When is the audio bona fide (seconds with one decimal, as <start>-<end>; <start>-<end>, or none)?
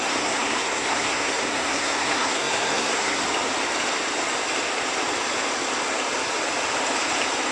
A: 3.2-7.5